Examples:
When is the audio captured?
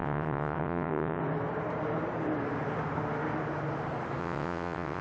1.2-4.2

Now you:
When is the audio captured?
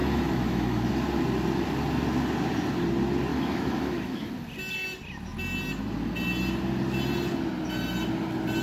0.9-3.3; 4.3-8.6